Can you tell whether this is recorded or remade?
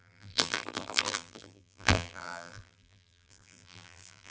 remade